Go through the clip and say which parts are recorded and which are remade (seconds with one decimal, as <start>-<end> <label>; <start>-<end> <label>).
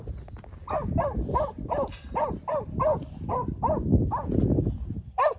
0.0-5.4 recorded